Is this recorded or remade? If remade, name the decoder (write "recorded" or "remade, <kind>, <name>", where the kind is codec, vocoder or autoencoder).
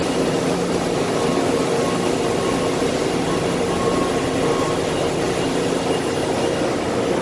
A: recorded